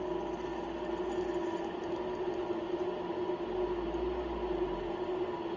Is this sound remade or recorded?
recorded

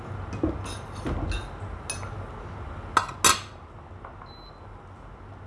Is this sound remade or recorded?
recorded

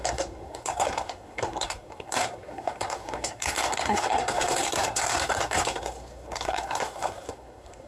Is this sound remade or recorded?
remade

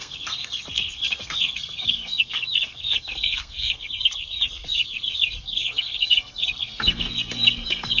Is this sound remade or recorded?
remade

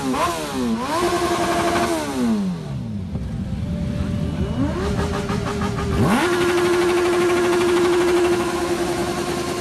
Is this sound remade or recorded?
recorded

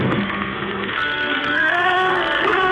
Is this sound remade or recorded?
remade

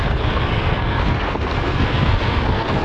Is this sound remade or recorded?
remade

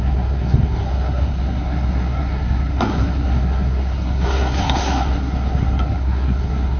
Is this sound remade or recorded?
remade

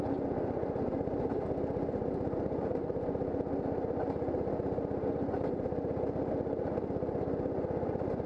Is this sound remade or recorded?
recorded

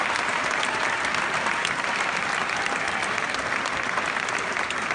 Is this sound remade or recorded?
recorded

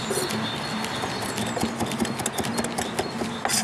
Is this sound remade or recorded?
recorded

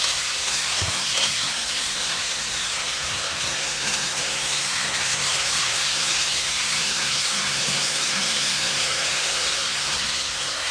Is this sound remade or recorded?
remade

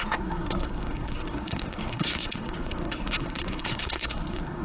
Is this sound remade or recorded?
remade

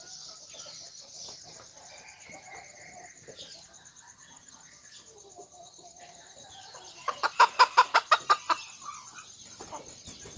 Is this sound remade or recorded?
recorded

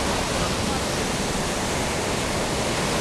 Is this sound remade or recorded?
recorded